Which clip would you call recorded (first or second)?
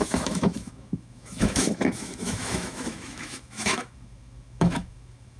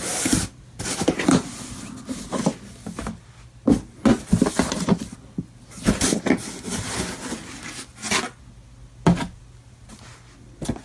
second